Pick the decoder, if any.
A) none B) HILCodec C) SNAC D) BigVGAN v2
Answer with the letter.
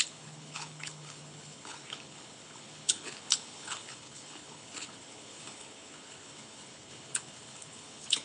B